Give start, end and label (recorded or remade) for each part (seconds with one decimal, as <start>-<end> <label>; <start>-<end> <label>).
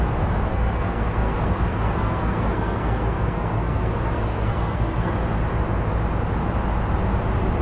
0.0-0.5 recorded; 0.5-5.1 remade; 5.1-7.6 recorded